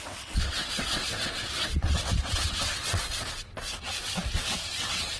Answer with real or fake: fake